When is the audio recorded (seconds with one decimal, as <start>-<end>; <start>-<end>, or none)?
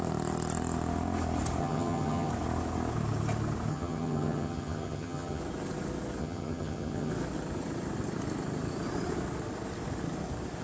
0.0-1.6; 2.3-3.7; 5.4-6.2; 7.1-10.6